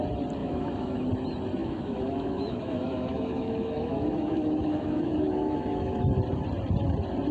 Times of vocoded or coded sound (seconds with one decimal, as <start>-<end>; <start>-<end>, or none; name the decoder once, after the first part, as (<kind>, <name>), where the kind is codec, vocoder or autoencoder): 0.4-1.1 (autoencoder, DAC-VAE); 1.6-6.0